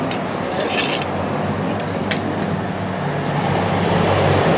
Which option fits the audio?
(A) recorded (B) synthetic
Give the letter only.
A